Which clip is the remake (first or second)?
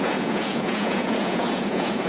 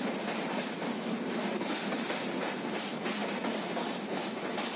first